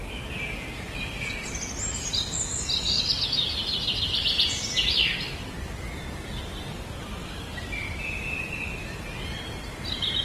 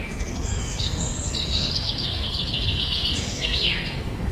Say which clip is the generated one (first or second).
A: second